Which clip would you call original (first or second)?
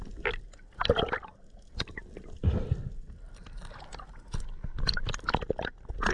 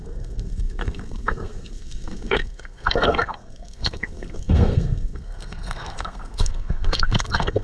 first